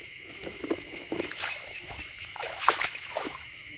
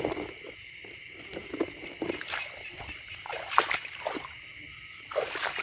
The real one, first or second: second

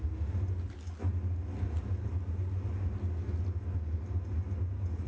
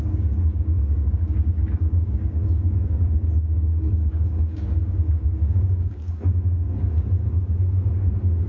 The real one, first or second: first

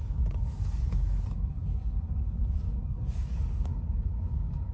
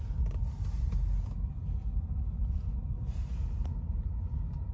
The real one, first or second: second